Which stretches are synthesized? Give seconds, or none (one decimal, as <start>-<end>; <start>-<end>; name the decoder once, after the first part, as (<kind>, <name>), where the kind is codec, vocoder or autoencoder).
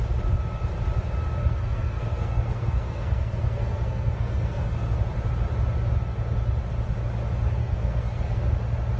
1.4-5.0 (codec, SNAC); 7.6-8.4